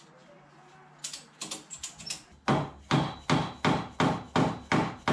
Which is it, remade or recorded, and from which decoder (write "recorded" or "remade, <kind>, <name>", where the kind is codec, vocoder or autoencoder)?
recorded